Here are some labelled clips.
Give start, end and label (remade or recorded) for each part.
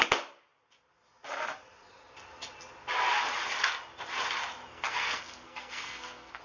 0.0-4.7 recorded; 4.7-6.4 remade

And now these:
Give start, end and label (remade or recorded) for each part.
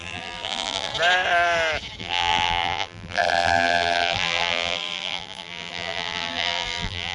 0.0-0.9 remade; 0.9-2.0 recorded; 2.0-7.1 remade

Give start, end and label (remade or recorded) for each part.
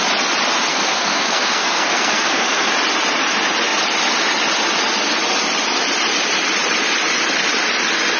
0.0-0.7 recorded; 0.7-2.7 remade; 2.7-8.2 recorded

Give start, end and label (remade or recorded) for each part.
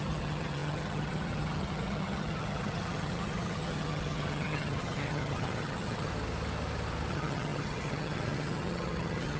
0.0-6.1 remade; 6.1-7.1 recorded; 7.1-9.4 remade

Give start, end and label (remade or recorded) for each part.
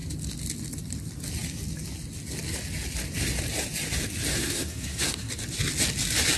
0.0-4.3 recorded; 4.3-5.3 remade; 5.3-6.4 recorded